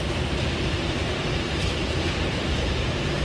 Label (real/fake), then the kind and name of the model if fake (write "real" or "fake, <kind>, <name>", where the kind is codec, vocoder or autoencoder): fake, vocoder, BigVGAN v2